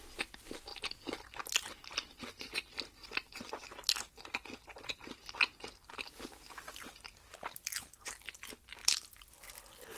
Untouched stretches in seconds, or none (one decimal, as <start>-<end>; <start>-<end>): 0.0-0.7; 2.2-3.0; 4.0-10.0